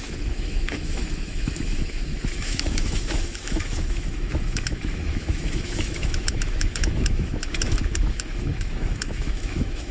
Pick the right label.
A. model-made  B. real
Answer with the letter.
A